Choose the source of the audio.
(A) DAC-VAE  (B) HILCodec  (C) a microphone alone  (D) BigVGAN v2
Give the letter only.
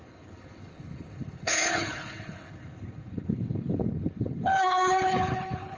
B